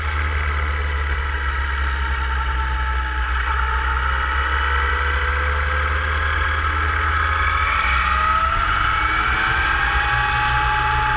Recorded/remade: recorded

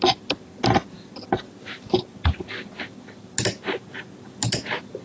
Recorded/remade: recorded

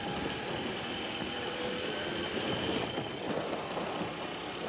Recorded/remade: recorded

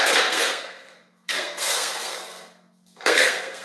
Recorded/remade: remade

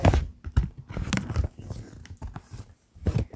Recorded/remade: recorded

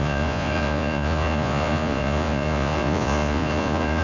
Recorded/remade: remade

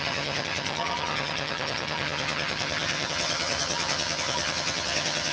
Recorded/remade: remade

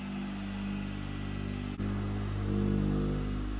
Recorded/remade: recorded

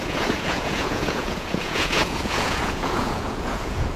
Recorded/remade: remade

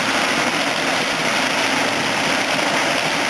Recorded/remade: recorded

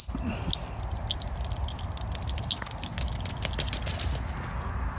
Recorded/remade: recorded